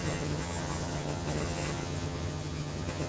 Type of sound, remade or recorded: remade